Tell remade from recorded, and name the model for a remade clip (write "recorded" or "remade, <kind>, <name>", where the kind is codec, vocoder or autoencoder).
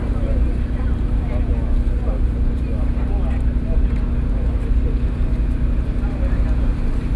recorded